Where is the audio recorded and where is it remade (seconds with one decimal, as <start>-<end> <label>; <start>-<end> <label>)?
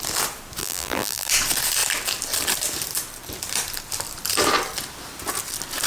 0.0-0.6 recorded; 0.6-1.3 remade; 1.3-5.9 recorded